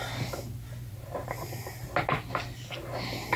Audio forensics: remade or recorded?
recorded